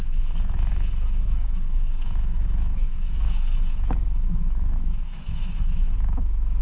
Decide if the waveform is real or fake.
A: fake